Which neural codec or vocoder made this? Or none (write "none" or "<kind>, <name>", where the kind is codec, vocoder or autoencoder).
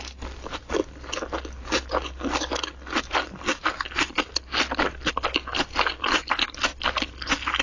none